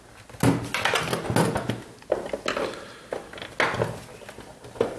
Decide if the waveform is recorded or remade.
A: recorded